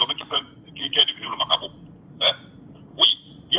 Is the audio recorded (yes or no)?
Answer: no